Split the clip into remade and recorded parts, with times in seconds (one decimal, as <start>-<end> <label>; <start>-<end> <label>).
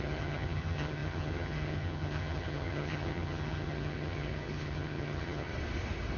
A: 0.0-5.5 remade; 5.5-6.2 recorded